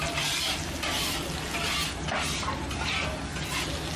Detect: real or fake real